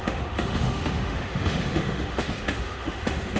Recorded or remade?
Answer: remade